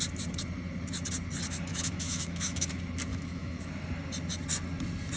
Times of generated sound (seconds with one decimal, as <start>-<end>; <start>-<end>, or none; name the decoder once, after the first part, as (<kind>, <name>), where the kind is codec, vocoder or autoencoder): 1.7-2.7 (autoencoder, DAC-VAE); 3.1-3.7